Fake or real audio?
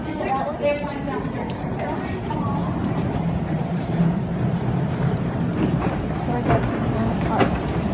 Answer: fake